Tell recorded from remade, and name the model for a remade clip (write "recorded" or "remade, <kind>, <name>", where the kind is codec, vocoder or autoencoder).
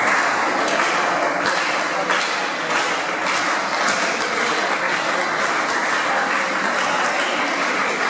recorded